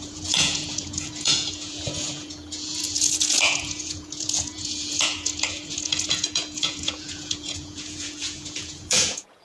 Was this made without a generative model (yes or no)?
no